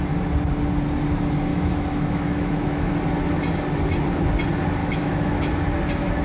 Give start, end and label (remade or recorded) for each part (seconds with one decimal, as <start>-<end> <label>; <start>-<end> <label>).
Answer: 0.0-1.5 recorded; 1.5-2.9 remade; 2.9-4.8 recorded; 4.8-5.5 remade; 5.5-6.2 recorded